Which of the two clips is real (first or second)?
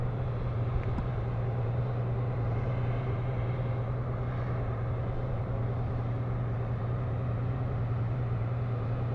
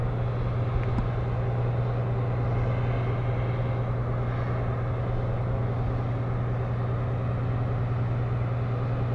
second